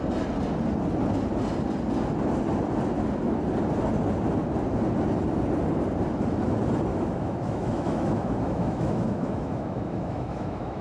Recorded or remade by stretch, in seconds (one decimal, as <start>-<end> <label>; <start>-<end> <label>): 0.0-6.9 recorded; 6.9-10.8 remade